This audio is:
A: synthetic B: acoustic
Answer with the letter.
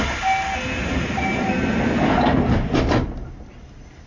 B